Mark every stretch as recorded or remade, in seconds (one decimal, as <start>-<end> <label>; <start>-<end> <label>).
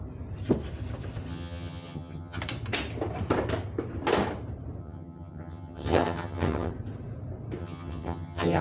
0.0-1.3 recorded; 1.3-2.4 remade; 2.4-4.8 recorded; 4.8-6.7 remade; 6.7-7.6 recorded; 7.6-8.6 remade